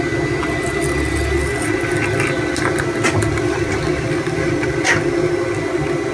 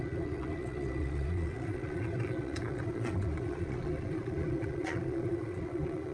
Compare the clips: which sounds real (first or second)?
first